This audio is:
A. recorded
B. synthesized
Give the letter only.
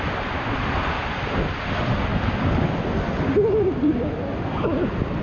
A